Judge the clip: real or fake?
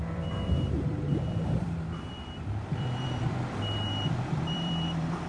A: fake